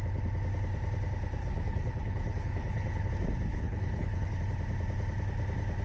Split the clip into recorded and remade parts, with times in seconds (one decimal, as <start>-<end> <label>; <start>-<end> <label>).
0.0-1.4 recorded; 1.4-3.1 remade; 3.1-3.5 recorded; 3.5-4.4 remade; 4.4-5.8 recorded